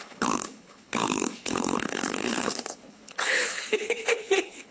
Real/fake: fake